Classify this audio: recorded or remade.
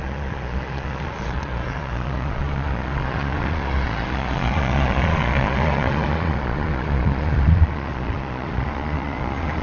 remade